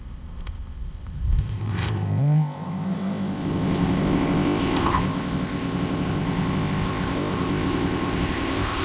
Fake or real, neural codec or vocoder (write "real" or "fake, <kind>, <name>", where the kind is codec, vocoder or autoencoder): fake, codec, ZipCodec